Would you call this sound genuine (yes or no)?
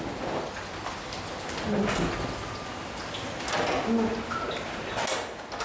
yes